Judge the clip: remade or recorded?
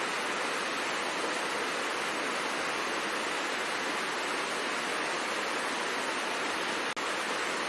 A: recorded